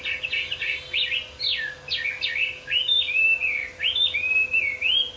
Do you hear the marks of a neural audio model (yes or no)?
no